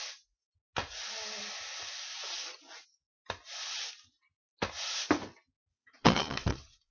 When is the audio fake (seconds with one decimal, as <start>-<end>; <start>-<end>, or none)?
5.7-6.9